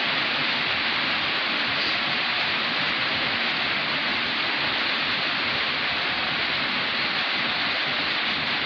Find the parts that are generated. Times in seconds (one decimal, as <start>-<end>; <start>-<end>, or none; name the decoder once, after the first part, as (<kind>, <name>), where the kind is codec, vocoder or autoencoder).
none